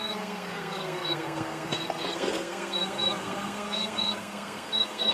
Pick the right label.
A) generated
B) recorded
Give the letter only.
A